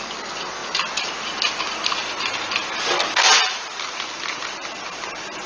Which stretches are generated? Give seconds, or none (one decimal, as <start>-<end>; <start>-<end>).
none

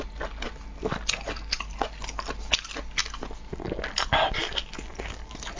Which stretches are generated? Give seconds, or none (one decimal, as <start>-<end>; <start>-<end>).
none

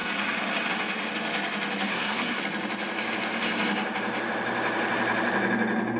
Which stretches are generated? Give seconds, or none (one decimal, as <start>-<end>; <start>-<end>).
1.9-2.4